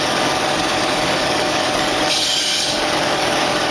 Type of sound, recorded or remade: remade